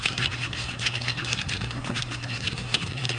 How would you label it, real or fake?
fake